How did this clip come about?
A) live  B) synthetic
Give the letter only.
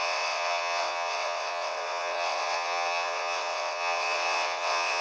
B